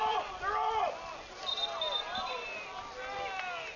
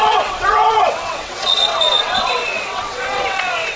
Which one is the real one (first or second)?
first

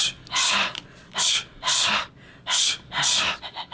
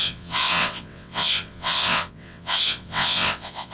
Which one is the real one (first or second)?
first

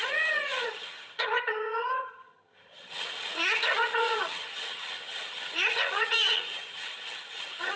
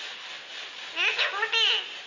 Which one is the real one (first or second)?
second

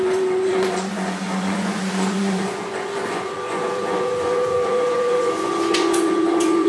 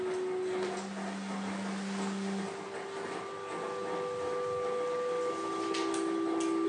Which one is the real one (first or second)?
second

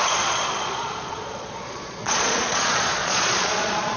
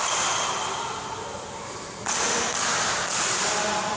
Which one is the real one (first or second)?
second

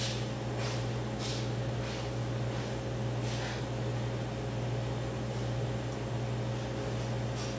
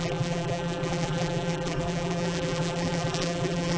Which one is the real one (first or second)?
first